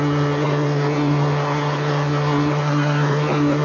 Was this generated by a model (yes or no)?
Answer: yes